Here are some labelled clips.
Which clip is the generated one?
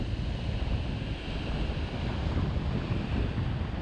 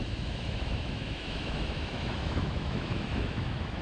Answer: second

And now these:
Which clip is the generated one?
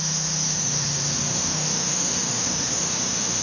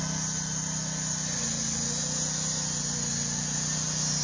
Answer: first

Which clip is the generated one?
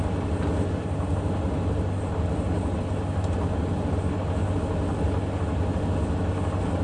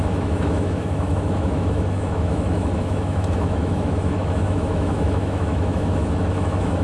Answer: second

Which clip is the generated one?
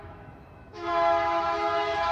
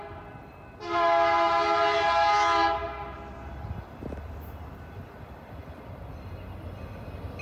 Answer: first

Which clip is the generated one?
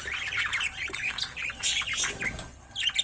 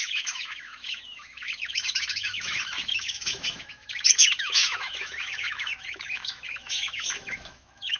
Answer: second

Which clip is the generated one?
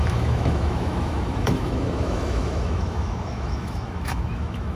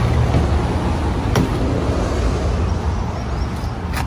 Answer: first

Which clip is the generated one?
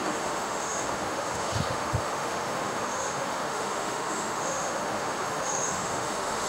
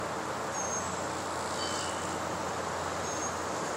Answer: first